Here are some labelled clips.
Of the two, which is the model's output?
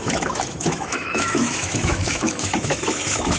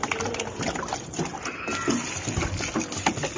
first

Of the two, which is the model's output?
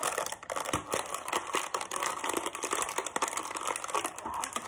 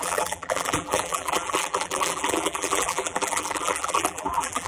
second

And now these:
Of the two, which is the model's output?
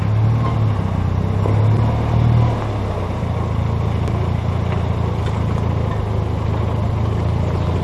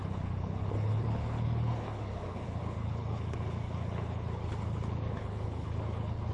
second